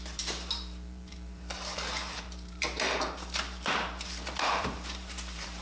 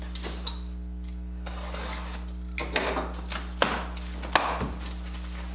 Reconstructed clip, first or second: first